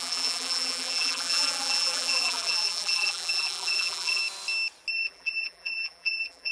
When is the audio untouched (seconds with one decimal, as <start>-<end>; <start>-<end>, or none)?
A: 4.2-4.9